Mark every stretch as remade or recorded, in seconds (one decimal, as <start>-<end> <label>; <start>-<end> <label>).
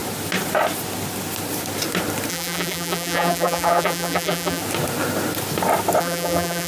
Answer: 0.0-2.3 recorded; 2.3-4.6 remade; 4.6-6.0 recorded; 6.0-6.7 remade